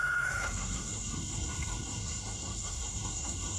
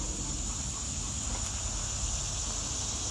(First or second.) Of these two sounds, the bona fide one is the second